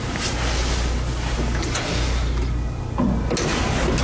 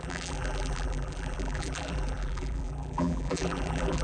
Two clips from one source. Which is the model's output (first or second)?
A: second